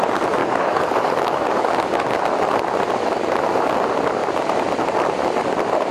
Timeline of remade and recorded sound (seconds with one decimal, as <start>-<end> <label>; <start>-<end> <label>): 0.0-0.4 recorded; 0.4-2.2 remade; 2.2-5.9 recorded

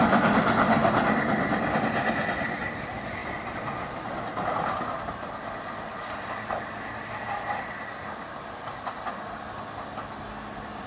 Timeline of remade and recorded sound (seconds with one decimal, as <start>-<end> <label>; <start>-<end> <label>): 0.0-0.8 recorded; 0.8-1.8 remade; 1.8-10.9 recorded

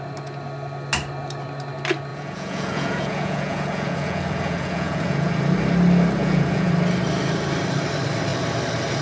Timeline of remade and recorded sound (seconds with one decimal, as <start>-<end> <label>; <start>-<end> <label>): 0.0-2.1 recorded; 2.1-5.3 remade; 5.3-6.2 recorded; 6.2-6.7 remade; 6.7-9.0 recorded